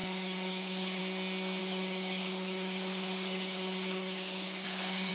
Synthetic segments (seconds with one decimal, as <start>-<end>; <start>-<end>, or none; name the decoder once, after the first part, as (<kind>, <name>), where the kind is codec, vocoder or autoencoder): 0.0-1.0 (codec, HILCodec); 1.6-5.1